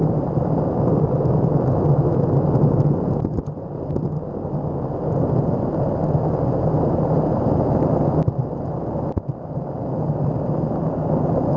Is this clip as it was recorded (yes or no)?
yes